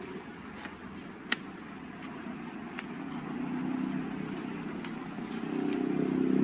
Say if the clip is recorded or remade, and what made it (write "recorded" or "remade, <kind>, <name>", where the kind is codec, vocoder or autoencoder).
recorded